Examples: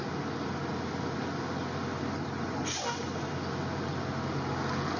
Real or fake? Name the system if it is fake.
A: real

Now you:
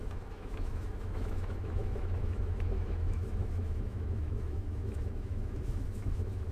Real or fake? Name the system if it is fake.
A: fake, autoencoder, DAC-VAE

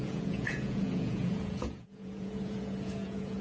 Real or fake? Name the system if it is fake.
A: fake, vocoder, Vocos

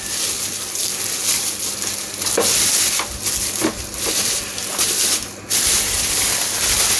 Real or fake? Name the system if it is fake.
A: real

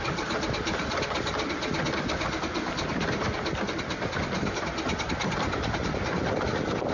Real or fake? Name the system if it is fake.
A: real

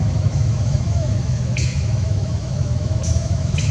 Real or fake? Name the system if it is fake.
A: fake, autoencoder, DAC-VAE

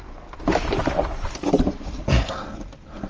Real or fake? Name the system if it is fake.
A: real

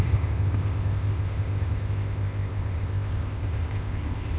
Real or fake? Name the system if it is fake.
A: fake, codec, ZipCodec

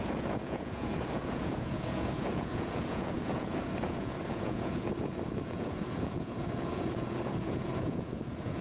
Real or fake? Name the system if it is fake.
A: fake, vocoder, Vocos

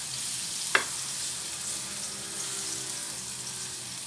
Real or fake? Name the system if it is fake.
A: real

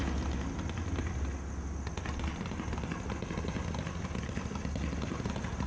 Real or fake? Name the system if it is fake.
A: real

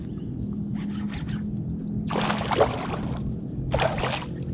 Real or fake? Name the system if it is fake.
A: real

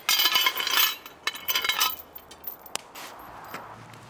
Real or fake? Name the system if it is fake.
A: real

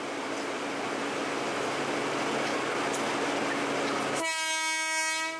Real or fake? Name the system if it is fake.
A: real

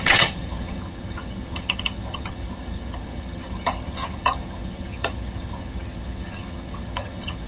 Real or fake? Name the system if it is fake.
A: fake, vocoder, HiFi-GAN